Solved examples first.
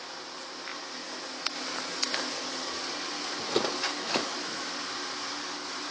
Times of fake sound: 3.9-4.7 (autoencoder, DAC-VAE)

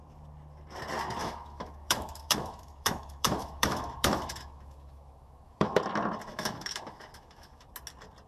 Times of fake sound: 1.2-5.8 (autoencoder, DAC-VAE); 6.3-7.7

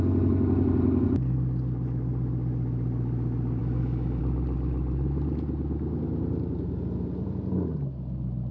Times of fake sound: 3.6-4.2 (autoencoder, DAC-VAE)

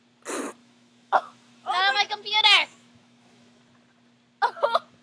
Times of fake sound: 0.6-3.6 (autoencoder, DAC-VAE)